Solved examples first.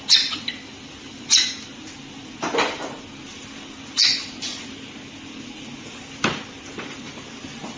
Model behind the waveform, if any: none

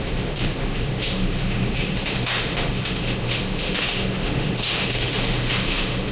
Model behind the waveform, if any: autoencoder, DAC-VAE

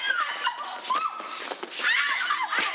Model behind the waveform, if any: none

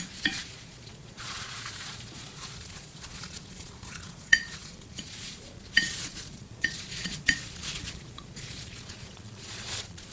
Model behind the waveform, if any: vocoder, Vocos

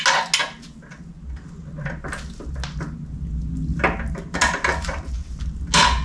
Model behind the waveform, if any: none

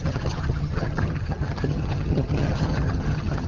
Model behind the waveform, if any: vocoder, HiFi-GAN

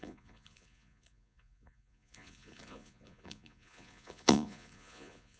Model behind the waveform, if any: vocoder, Vocos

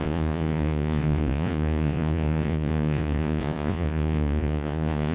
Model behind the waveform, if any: vocoder, Vocos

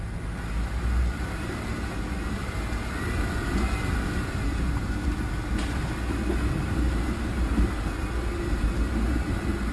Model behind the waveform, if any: none